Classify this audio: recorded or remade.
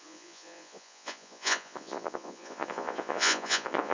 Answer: remade